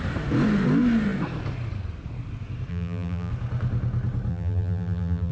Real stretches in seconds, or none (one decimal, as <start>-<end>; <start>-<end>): 0.0-2.7; 3.3-4.3